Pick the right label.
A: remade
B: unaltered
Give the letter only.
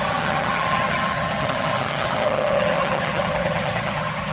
A